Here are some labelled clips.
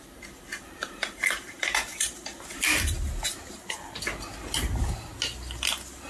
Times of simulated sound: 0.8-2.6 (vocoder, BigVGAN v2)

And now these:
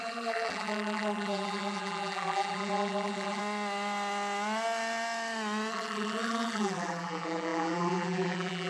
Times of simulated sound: 0.0-3.4 (vocoder, BigVGAN v2); 5.7-8.7

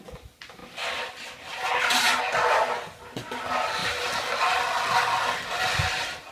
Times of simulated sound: 3.8-4.4 (vocoder, BigVGAN v2)

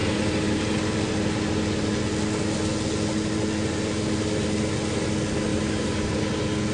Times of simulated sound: 5.5-6.1 (vocoder, BigVGAN v2)

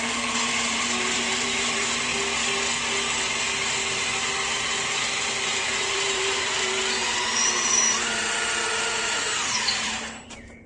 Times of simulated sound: 0.0-2.1 (vocoder, BigVGAN v2); 4.8-10.7

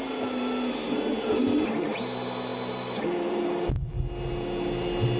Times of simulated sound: 2.5-3.7 (vocoder, BigVGAN v2)

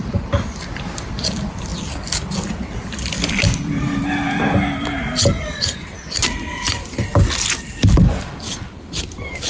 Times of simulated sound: 0.0-1.7 (vocoder, BigVGAN v2); 6.6-7.1; 7.6-9.5

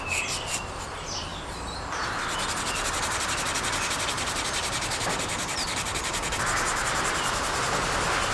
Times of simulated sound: 0.0-8.3 (vocoder, BigVGAN v2)